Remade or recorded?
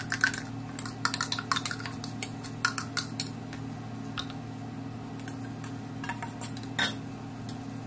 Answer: recorded